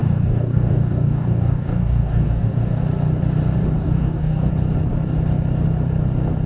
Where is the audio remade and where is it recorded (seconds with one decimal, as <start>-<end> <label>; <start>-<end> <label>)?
0.0-2.8 remade; 2.8-3.8 recorded; 3.8-4.5 remade; 4.5-6.5 recorded